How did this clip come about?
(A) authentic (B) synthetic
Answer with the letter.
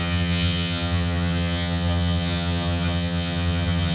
B